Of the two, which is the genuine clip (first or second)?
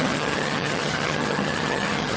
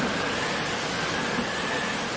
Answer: second